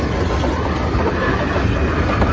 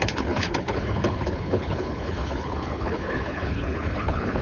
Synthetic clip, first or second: second